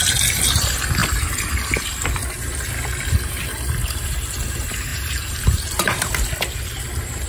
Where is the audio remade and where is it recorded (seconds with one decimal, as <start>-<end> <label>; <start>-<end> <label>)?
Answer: 0.0-4.9 recorded; 4.9-6.1 remade; 6.1-7.3 recorded